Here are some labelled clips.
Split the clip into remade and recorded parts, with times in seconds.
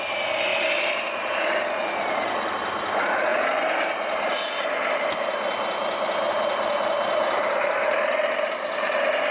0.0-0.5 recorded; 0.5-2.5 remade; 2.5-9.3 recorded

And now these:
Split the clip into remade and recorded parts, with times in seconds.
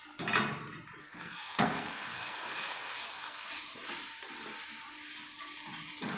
0.0-1.0 recorded; 1.0-3.5 remade; 3.5-6.2 recorded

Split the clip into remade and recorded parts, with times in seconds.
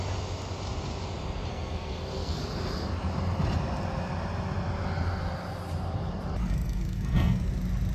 0.0-1.5 recorded; 1.5-2.4 remade; 2.4-6.4 recorded; 6.4-7.5 remade; 7.5-7.9 recorded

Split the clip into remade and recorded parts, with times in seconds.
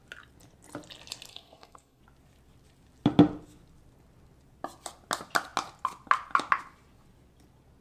0.0-1.3 recorded; 1.3-2.0 remade; 2.0-7.8 recorded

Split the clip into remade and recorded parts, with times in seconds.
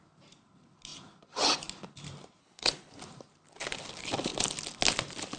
0.0-2.4 recorded; 2.4-3.0 remade; 3.0-5.4 recorded